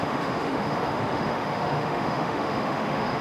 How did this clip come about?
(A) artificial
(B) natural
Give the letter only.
A